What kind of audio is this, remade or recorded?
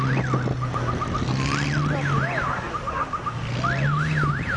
recorded